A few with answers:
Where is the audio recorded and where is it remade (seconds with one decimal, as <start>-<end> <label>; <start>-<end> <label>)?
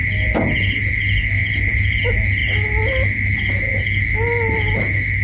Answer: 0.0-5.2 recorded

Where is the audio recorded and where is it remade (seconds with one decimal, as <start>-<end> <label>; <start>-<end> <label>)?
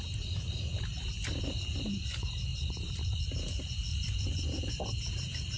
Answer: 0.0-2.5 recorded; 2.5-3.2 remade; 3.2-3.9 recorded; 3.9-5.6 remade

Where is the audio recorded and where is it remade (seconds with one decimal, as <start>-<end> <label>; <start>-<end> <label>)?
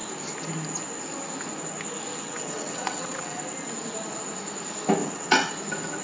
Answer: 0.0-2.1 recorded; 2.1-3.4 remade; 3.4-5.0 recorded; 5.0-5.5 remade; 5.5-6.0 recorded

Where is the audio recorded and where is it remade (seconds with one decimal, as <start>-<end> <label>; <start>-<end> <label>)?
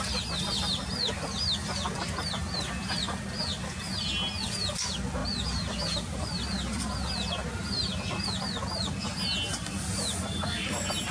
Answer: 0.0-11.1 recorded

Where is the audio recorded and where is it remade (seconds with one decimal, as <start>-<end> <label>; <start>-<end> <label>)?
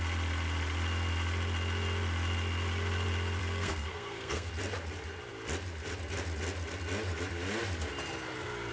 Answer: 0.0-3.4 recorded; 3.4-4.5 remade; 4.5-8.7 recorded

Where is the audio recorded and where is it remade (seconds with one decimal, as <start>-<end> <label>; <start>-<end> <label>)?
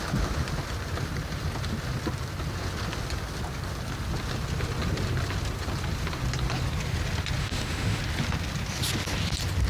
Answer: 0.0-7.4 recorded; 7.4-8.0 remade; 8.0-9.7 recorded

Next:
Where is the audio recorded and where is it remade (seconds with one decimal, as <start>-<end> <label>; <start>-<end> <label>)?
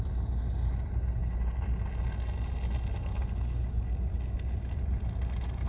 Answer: 0.0-1.2 remade; 1.2-4.6 recorded; 4.6-5.7 remade